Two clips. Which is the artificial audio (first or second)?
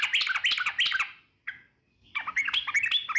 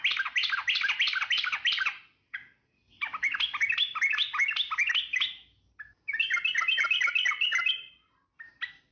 second